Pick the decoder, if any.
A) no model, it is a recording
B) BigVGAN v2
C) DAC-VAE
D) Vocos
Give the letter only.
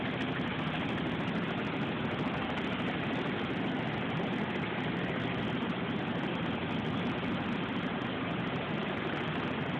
A